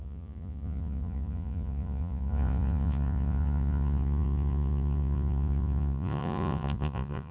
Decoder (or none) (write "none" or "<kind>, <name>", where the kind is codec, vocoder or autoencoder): vocoder, Vocos